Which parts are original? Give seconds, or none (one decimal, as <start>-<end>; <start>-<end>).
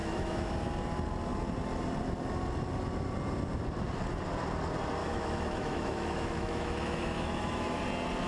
0.5-5.0; 7.8-8.3